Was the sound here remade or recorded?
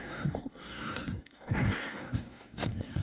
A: remade